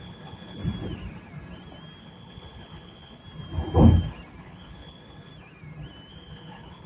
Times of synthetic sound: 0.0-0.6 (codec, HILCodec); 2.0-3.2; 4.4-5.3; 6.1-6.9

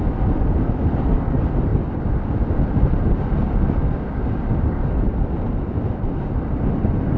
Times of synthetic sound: none

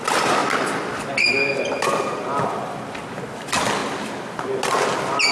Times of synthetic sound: none

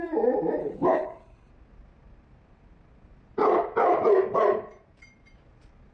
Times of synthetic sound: 0.6-1.5 (codec, HILCodec)